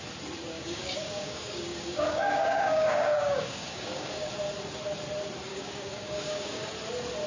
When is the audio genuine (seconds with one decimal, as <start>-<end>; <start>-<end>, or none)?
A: 0.0-0.5; 4.3-5.5; 6.7-7.3